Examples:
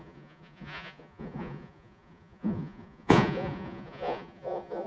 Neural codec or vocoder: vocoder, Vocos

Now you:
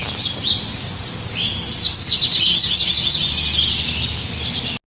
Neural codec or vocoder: none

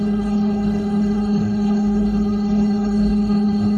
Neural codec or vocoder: codec, HILCodec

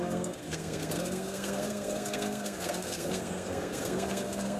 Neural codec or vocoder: codec, SNAC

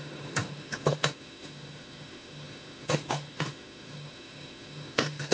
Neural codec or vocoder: autoencoder, DAC-VAE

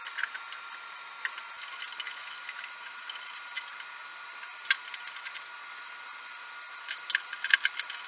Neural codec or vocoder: none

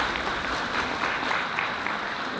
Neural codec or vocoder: none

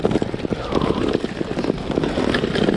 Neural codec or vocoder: none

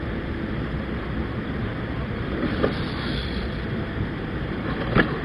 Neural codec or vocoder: vocoder, BigVGAN v2